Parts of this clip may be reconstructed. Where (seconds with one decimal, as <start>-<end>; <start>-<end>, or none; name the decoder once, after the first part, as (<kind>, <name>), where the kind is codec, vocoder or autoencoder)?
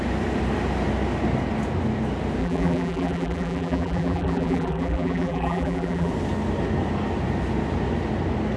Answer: 2.4-6.1 (vocoder, BigVGAN v2)